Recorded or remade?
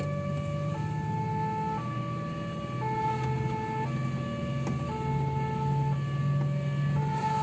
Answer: recorded